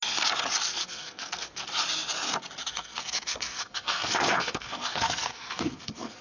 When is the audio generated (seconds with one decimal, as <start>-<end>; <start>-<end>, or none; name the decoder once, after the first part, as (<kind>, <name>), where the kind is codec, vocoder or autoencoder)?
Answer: 0.8-1.7 (codec, SNAC); 2.6-6.2